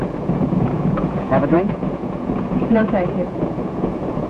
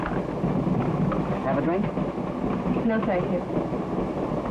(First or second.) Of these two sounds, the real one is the second